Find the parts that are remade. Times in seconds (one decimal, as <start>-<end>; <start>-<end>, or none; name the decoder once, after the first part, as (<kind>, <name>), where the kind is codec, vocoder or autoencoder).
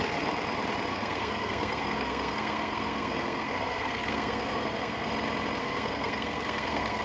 0.9-5.1 (codec, SNAC); 5.6-7.0